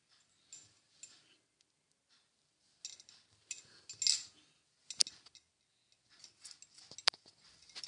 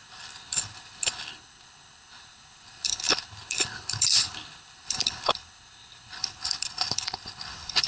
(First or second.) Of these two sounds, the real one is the first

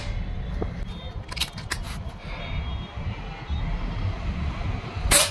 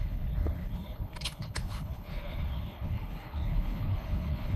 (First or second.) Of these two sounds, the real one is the first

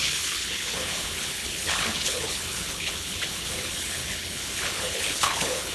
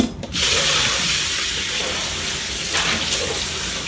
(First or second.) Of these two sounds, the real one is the second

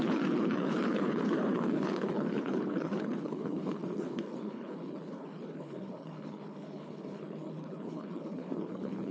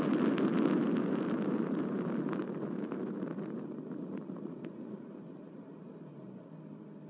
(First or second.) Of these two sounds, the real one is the second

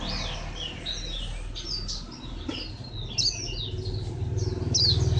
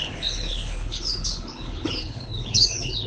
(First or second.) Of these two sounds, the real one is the first